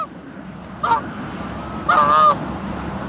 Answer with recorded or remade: recorded